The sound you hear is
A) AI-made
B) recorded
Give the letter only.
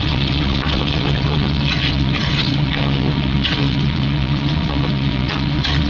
A